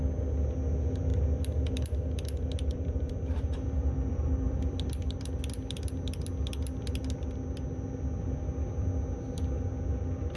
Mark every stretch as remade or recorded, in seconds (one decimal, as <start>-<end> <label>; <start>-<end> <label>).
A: 0.0-1.1 recorded; 1.1-5.4 remade; 5.4-10.4 recorded